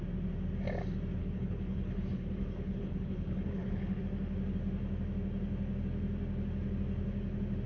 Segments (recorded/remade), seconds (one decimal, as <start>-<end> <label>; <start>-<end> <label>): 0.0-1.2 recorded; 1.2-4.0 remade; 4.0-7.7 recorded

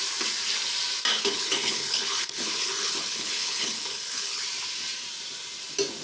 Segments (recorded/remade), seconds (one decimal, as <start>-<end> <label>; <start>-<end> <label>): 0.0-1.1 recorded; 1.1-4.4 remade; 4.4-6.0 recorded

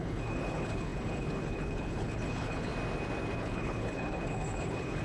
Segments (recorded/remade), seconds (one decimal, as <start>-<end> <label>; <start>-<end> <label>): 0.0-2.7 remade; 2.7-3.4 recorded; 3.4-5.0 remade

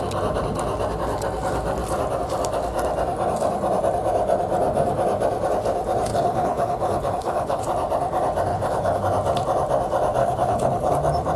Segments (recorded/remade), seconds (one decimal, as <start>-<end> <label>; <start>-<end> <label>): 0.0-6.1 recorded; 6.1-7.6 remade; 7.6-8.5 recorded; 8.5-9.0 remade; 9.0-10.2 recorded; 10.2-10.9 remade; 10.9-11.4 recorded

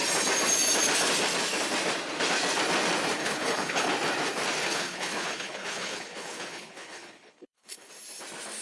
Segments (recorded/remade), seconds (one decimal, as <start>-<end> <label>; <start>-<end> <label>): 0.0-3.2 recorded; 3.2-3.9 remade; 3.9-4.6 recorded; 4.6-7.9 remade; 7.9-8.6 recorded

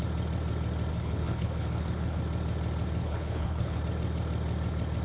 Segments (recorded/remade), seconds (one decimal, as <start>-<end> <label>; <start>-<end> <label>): 0.0-0.9 recorded; 0.9-2.2 remade; 2.2-3.0 recorded; 3.0-3.8 remade; 3.8-5.0 recorded

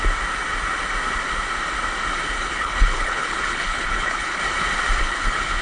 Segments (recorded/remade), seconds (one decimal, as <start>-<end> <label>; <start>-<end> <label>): 0.0-2.3 recorded; 2.3-4.4 remade; 4.4-5.0 recorded; 5.0-5.6 remade